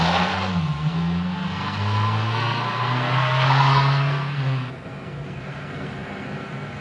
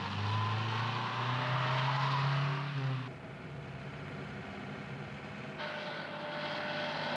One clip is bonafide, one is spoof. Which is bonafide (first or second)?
second